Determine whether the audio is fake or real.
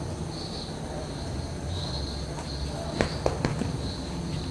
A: real